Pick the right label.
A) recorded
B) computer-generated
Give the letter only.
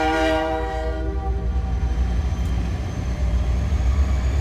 B